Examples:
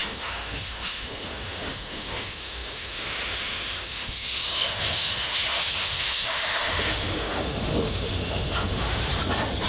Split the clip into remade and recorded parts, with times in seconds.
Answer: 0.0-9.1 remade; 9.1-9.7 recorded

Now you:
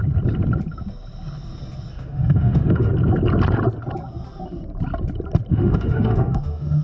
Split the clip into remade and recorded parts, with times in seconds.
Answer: 0.0-1.9 recorded; 1.9-2.9 remade; 2.9-5.5 recorded; 5.5-6.8 remade